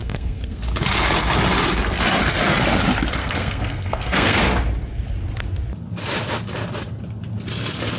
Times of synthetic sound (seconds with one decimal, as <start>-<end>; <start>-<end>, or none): 0.0-0.6; 3.2-4.4